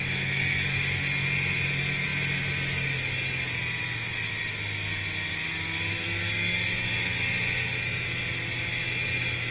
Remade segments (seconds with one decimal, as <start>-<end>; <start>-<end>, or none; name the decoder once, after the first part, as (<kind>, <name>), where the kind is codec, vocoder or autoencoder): none